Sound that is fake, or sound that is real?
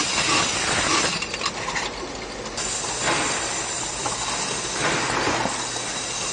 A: real